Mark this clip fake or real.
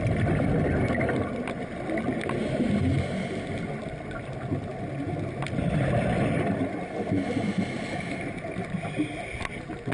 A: real